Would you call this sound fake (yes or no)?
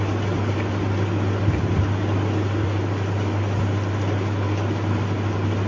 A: no